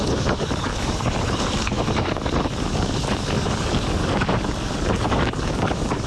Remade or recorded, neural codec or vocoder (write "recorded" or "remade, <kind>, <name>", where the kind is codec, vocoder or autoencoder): remade, codec, DAC